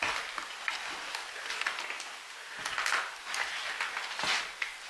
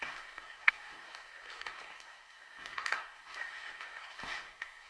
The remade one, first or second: second